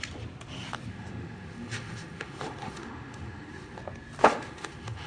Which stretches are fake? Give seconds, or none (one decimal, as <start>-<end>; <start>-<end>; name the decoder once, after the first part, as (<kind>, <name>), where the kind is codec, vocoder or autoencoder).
0.9-3.8 (autoencoder, DAC-VAE); 4.2-5.1